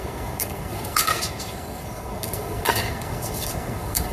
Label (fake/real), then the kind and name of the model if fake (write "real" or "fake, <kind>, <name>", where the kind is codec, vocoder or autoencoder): fake, codec, SNAC